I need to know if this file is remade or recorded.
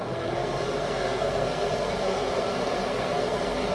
remade